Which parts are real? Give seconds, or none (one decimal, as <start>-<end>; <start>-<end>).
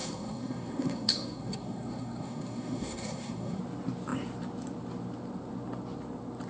3.6-6.5